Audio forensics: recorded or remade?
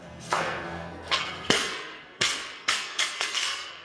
remade